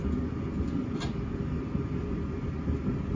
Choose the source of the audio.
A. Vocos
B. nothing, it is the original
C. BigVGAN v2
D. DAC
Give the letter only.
B